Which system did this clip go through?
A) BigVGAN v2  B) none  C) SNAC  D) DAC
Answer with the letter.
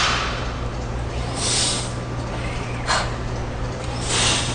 B